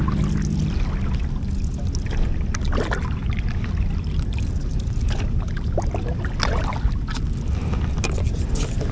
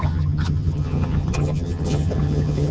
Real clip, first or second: first